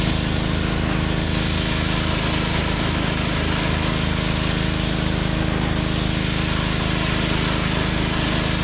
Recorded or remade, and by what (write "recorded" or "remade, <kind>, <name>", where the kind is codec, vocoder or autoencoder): recorded